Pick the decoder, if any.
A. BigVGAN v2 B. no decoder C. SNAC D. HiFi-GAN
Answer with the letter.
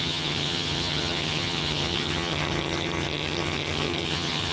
D